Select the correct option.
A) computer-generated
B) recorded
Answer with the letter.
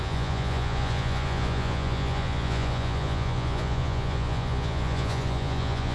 A